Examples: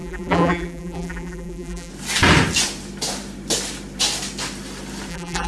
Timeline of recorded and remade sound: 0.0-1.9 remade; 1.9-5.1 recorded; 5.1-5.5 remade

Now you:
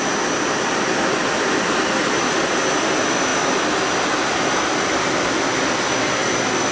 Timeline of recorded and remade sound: 0.0-6.7 recorded

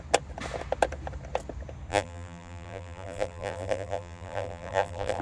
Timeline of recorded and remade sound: 0.0-1.9 recorded; 1.9-5.2 remade

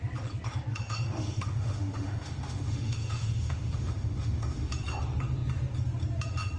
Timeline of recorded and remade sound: 0.0-0.7 recorded; 0.7-4.7 remade; 4.7-6.6 recorded

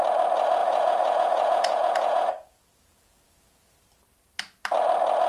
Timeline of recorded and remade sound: 0.0-0.6 recorded; 0.6-3.8 remade; 3.8-5.3 recorded

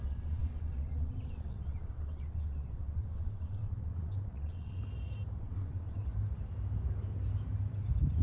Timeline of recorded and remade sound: 0.0-4.8 remade; 4.8-5.4 recorded; 5.4-6.1 remade; 6.1-8.2 recorded

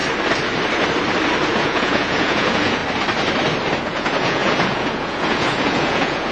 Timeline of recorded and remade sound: 0.0-1.5 recorded; 1.5-2.8 remade; 2.8-3.8 recorded; 3.8-6.3 remade